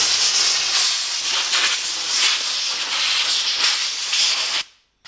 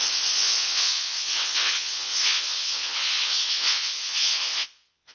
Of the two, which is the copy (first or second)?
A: second